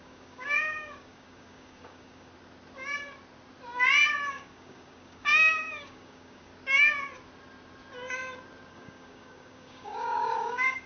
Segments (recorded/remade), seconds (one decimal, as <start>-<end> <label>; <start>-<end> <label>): 0.0-2.3 remade; 2.3-4.3 recorded; 4.3-6.5 remade; 6.5-8.7 recorded; 8.7-10.9 remade